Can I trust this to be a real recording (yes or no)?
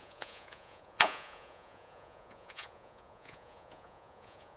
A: no